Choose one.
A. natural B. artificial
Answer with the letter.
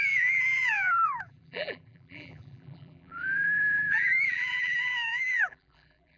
B